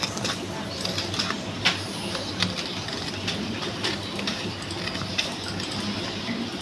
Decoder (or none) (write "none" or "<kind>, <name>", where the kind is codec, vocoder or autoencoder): none